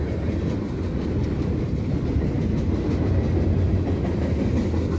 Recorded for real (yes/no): yes